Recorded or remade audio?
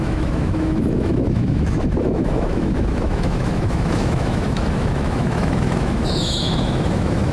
remade